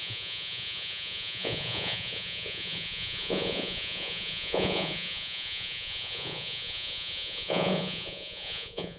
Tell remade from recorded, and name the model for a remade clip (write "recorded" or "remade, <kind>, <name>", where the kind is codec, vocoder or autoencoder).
remade, vocoder, Vocos